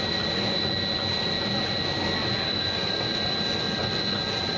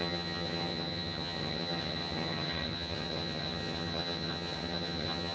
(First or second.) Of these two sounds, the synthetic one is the second